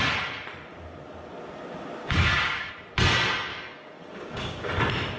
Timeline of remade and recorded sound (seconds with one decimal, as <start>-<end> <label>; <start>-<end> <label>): 0.0-2.0 recorded; 2.0-2.7 remade; 2.7-3.5 recorded; 3.5-4.7 remade; 4.7-5.2 recorded

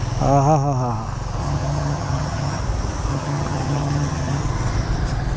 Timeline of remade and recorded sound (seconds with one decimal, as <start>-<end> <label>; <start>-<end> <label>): 0.0-1.4 recorded; 1.4-2.6 remade; 2.6-3.1 recorded; 3.1-4.4 remade; 4.4-5.4 recorded

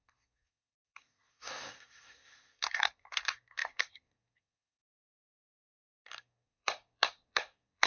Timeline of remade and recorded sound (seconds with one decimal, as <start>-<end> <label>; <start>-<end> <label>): 0.0-7.9 remade